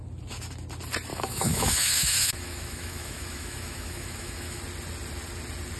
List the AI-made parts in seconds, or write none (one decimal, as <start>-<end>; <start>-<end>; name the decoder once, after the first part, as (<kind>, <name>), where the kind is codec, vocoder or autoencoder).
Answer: 1.1-4.6 (autoencoder, DAC-VAE)